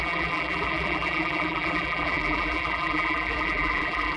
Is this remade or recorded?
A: remade